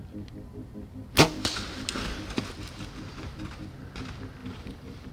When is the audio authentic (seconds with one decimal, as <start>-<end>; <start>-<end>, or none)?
0.0-4.4